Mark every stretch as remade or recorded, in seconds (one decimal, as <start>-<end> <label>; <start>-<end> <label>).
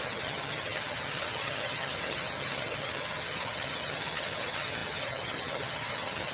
0.0-6.3 remade